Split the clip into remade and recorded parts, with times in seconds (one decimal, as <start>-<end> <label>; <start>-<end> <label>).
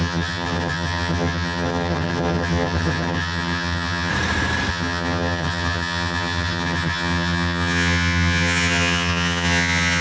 0.0-4.1 remade; 4.1-4.7 recorded; 4.7-10.0 remade